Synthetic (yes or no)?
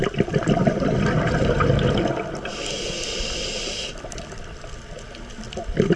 no